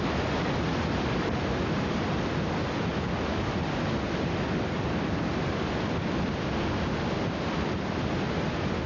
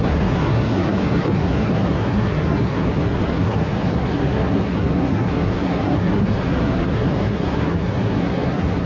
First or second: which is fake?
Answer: second